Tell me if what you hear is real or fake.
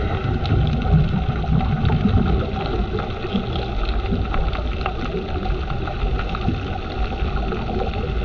real